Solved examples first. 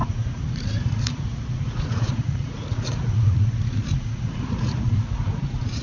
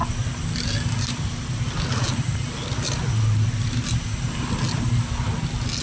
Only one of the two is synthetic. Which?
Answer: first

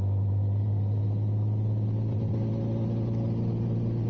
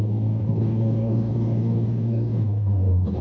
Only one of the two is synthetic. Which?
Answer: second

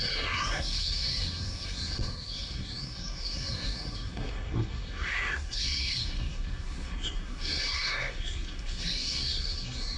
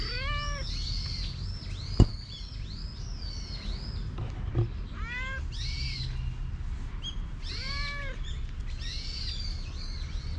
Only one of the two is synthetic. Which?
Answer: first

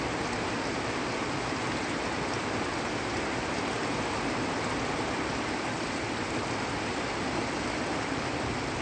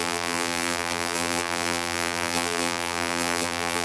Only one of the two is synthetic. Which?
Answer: second